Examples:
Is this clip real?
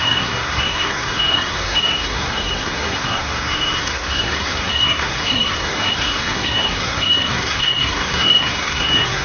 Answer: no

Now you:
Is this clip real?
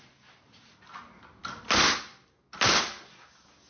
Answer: yes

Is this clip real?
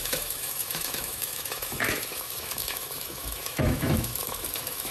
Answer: no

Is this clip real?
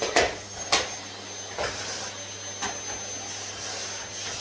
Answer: yes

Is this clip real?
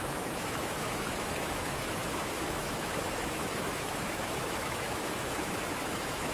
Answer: no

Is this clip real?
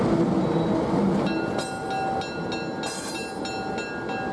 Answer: yes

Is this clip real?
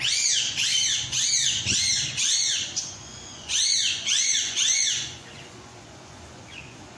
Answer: no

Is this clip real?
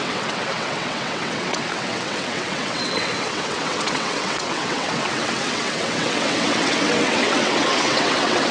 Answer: no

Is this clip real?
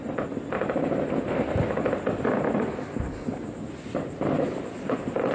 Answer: yes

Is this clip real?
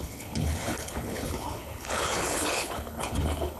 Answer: no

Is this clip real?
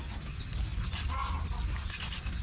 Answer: yes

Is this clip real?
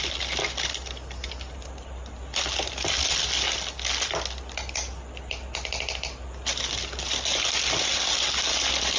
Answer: yes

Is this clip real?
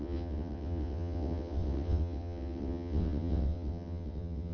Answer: no